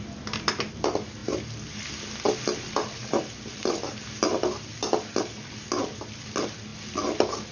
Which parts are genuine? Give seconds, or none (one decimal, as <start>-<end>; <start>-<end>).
0.0-7.5